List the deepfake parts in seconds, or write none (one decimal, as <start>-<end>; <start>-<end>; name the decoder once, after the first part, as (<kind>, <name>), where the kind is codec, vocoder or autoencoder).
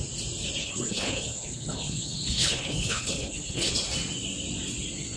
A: 0.6-3.7 (codec, HILCodec)